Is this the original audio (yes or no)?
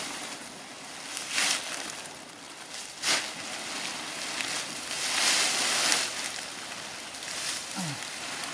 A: yes